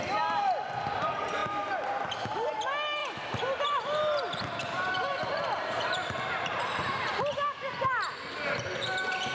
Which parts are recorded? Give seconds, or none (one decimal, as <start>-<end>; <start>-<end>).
0.0-3.0; 6.2-9.3